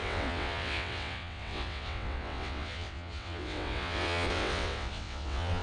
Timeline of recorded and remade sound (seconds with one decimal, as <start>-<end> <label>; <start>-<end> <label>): 0.0-5.6 remade